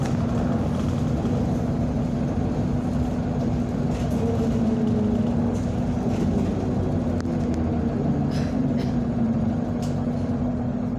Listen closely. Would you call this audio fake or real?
real